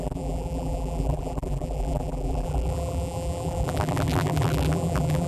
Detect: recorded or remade remade